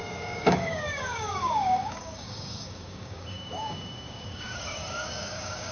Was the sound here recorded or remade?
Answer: remade